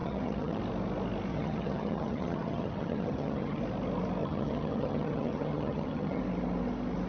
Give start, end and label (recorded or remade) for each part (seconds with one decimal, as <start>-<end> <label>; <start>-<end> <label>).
0.0-0.6 remade; 0.6-1.3 recorded; 1.3-3.6 remade; 3.6-4.2 recorded; 4.2-6.2 remade; 6.2-7.1 recorded